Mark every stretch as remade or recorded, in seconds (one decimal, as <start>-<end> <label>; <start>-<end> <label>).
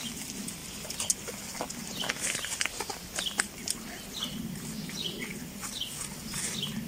0.0-6.9 recorded